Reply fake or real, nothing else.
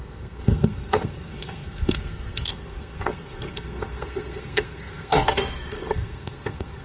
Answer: fake